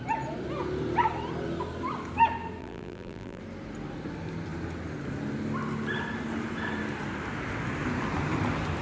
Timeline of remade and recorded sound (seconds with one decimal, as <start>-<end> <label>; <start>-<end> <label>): 0.0-2.6 recorded; 2.6-3.4 remade; 3.4-8.8 recorded